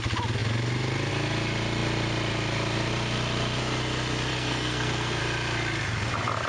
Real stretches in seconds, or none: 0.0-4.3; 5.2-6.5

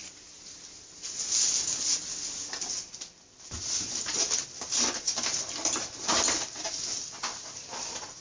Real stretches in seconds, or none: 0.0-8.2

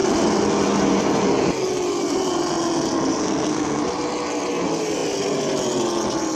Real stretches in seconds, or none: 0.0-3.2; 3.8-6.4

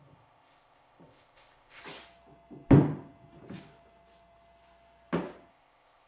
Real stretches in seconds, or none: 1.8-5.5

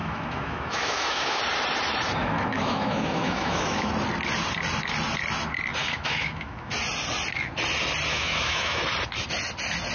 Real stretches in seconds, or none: 1.4-2.2; 3.9-5.8; 6.7-8.1; 8.8-9.9